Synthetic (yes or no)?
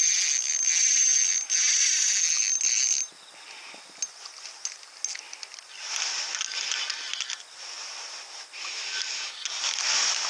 no